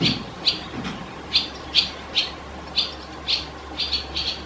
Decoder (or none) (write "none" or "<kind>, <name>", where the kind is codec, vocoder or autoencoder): none